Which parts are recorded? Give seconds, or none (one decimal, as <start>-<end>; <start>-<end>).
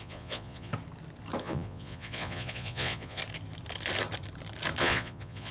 0.7-1.4; 3.2-4.8